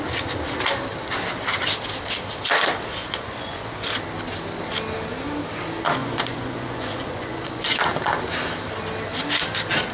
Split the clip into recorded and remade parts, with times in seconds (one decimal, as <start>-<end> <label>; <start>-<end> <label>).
0.0-3.0 recorded; 3.0-3.7 remade; 3.7-6.0 recorded; 6.0-7.9 remade; 7.9-9.9 recorded